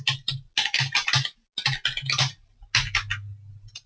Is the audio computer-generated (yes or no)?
no